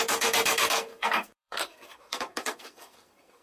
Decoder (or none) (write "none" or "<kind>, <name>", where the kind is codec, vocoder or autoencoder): codec, SNAC